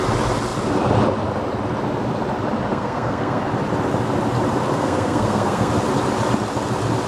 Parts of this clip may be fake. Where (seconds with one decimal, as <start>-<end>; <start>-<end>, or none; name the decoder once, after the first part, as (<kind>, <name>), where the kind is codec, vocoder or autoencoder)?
2.7-3.4 (codec, SNAC); 4.7-5.7